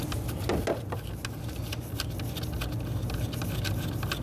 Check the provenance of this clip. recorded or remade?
recorded